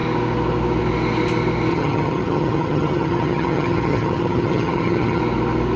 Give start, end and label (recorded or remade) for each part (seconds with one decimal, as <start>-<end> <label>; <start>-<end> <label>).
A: 0.0-1.7 recorded; 1.7-5.2 remade; 5.2-5.8 recorded